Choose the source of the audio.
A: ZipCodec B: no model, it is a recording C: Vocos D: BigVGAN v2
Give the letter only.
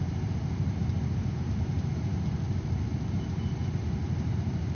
D